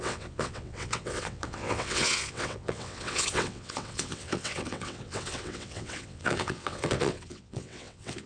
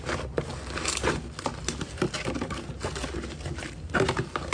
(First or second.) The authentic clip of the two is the second